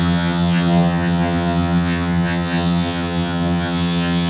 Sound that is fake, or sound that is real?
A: fake